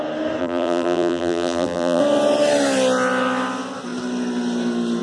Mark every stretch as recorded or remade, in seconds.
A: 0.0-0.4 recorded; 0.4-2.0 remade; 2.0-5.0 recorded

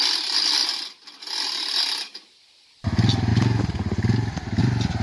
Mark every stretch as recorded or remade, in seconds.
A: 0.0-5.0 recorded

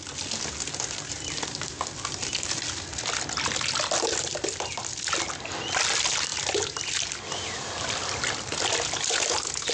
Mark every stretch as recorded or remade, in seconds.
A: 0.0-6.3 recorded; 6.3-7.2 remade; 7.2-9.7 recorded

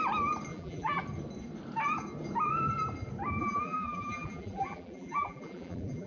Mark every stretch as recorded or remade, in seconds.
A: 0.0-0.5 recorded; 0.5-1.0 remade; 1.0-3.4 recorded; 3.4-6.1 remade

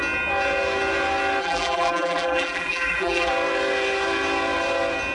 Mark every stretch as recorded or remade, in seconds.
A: 0.0-1.4 recorded; 1.4-3.3 remade; 3.3-5.1 recorded